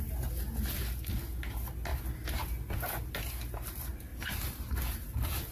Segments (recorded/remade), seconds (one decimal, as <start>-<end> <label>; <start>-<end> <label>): 0.0-4.1 recorded; 4.1-5.5 remade